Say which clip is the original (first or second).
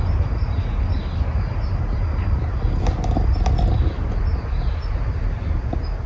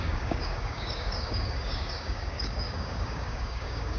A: first